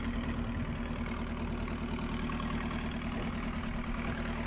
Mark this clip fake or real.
real